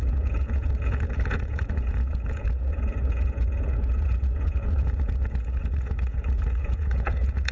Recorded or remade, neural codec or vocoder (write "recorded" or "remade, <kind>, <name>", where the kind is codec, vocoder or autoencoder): remade, vocoder, Vocos